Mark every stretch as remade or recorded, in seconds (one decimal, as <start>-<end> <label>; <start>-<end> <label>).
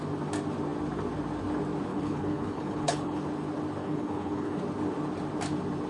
0.0-1.9 recorded; 1.9-3.2 remade; 3.2-3.8 recorded; 3.8-4.6 remade; 4.6-5.9 recorded